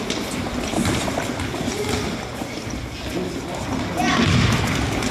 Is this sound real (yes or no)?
yes